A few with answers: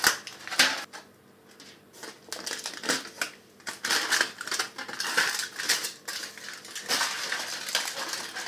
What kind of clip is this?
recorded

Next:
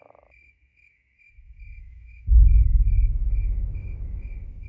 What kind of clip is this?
remade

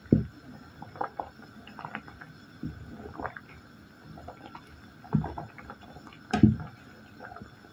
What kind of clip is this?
recorded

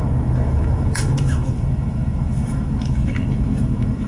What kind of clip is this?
remade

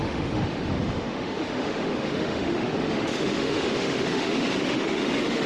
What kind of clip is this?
remade